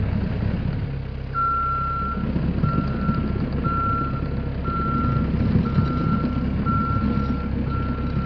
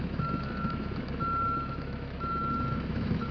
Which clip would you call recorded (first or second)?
first